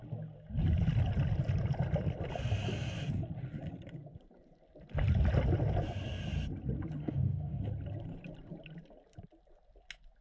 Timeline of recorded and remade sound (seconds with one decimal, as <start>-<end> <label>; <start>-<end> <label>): 0.0-7.0 recorded; 7.0-7.6 remade; 7.6-10.2 recorded